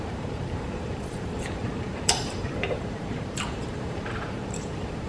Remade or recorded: remade